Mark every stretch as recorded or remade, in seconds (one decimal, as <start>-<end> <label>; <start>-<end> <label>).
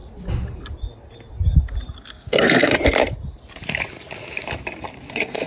0.0-2.1 recorded; 2.1-2.7 remade; 2.7-5.1 recorded; 5.1-5.5 remade